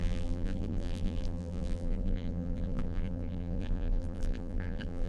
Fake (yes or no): yes